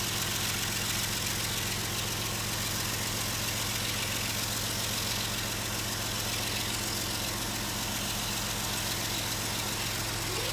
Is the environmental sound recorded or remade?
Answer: recorded